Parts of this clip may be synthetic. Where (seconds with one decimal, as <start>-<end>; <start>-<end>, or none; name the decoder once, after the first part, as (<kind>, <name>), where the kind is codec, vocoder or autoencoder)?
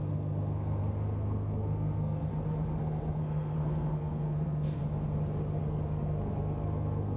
0.0-2.3 (codec, SNAC); 2.8-4.8; 5.6-7.2